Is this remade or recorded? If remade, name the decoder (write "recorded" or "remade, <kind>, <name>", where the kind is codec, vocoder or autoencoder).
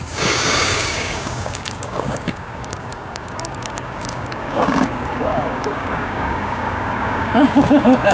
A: remade, codec, DAC